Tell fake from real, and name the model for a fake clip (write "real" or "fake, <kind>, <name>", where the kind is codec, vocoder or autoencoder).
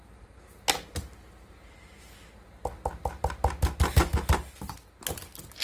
real